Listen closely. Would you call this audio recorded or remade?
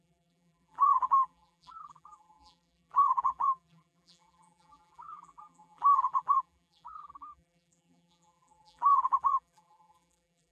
remade